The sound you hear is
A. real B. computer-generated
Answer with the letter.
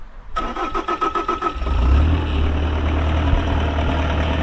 A